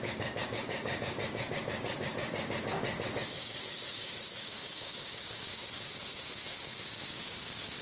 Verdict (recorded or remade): remade